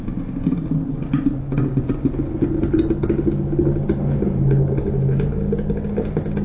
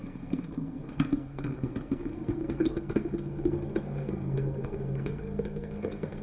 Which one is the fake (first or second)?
second